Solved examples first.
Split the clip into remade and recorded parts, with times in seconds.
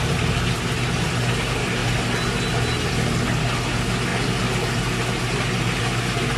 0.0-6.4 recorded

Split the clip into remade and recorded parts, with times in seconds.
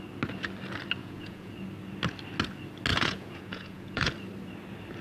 0.0-1.0 recorded; 1.0-1.5 remade; 1.5-2.9 recorded; 2.9-4.1 remade; 4.1-5.0 recorded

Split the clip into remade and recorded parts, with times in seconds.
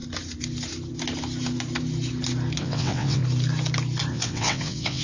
0.0-2.6 recorded; 2.6-3.2 remade; 3.2-4.1 recorded; 4.1-5.0 remade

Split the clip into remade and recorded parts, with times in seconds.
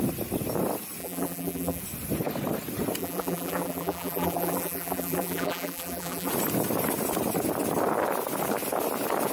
0.0-1.0 recorded; 1.0-1.8 remade; 1.8-3.0 recorded; 3.0-6.3 remade; 6.3-9.3 recorded